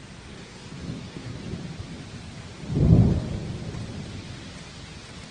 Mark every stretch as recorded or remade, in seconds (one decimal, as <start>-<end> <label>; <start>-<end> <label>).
0.0-0.4 recorded; 0.4-1.4 remade; 1.4-5.3 recorded